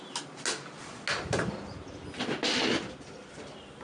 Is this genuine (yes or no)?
yes